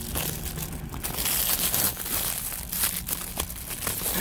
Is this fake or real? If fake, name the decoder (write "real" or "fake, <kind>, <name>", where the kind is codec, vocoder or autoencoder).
real